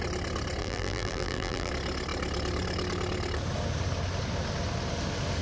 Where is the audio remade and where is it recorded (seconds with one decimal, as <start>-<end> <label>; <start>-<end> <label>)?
0.0-0.6 recorded; 0.6-1.7 remade; 1.7-5.4 recorded